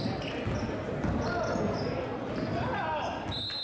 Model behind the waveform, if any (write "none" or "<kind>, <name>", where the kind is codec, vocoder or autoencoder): none